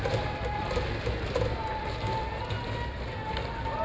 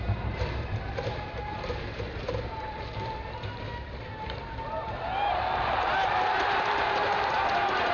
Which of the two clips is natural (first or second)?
first